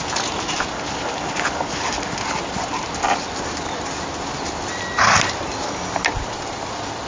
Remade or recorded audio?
recorded